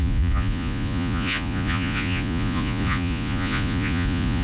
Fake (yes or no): yes